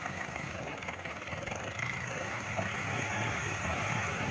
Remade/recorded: remade